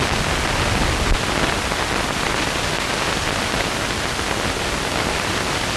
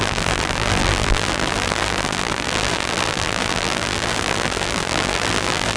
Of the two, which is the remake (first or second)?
second